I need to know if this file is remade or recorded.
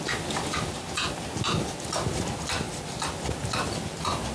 recorded